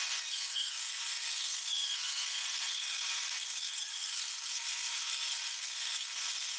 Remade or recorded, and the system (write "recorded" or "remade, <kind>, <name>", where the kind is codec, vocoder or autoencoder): remade, codec, SNAC